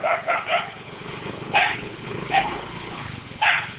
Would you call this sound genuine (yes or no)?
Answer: no